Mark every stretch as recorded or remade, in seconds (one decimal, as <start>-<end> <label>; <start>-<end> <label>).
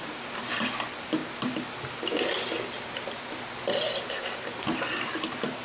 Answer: 0.0-5.6 recorded